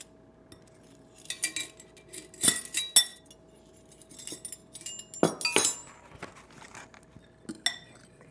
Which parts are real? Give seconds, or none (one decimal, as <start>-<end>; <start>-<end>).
0.0-8.3